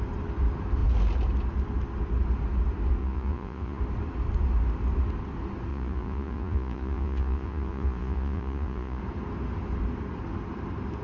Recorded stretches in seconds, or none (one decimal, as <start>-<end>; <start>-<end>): 0.0-3.0; 3.8-5.7; 9.0-11.0